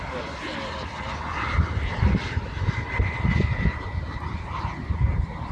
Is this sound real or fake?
real